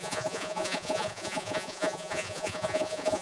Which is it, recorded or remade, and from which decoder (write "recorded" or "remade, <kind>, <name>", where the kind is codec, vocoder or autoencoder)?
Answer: remade, vocoder, Vocos